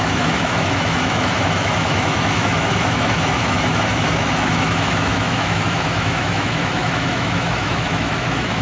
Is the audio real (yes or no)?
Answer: no